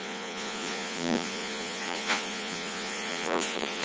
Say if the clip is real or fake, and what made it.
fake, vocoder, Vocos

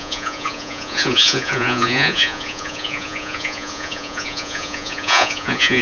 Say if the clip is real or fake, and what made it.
fake, vocoder, Vocos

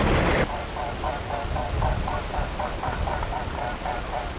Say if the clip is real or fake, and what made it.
real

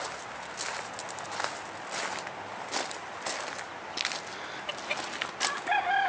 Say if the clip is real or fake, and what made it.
real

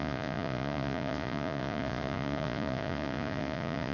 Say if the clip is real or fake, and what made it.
fake, vocoder, Vocos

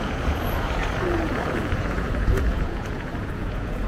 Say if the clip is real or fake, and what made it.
fake, vocoder, Vocos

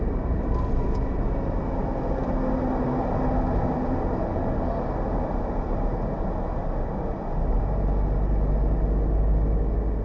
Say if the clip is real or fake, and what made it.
real